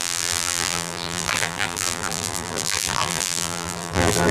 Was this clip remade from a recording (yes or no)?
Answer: yes